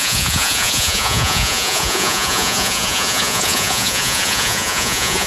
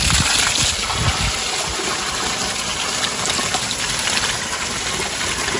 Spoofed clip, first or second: first